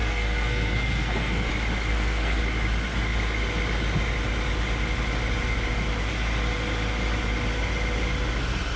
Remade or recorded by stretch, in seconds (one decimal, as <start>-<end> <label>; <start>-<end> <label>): 0.0-1.5 remade; 1.5-1.9 recorded; 1.9-2.4 remade; 2.4-8.8 recorded